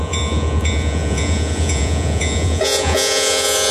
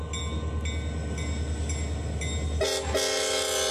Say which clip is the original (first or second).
second